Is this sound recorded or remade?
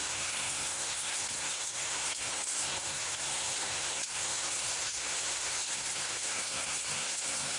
remade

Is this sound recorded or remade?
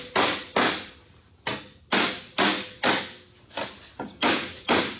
recorded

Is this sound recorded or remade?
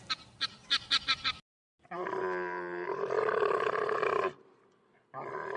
recorded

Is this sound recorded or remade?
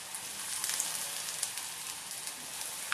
recorded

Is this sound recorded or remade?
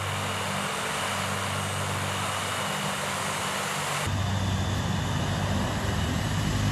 recorded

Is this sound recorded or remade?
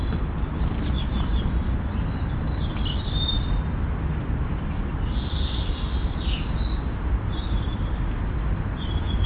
recorded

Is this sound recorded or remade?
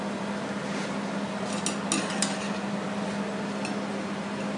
recorded